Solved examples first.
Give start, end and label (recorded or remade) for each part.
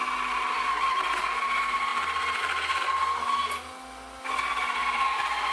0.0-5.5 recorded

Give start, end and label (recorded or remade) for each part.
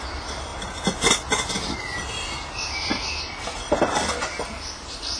0.0-0.5 remade; 0.5-3.6 recorded; 3.6-5.2 remade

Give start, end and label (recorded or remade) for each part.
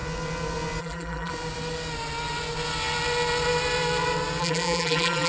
0.0-0.8 recorded; 0.8-1.3 remade; 1.3-4.4 recorded; 4.4-5.3 remade